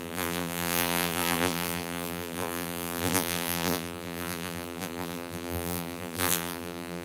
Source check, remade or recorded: remade